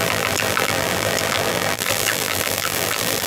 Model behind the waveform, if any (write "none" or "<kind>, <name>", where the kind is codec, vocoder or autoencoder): vocoder, BigVGAN v2